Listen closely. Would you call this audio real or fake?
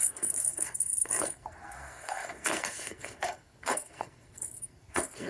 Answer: fake